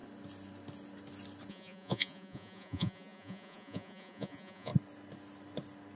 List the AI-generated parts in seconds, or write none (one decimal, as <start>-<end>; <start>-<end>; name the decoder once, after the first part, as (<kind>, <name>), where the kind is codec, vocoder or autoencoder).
1.5-4.7 (vocoder, Vocos)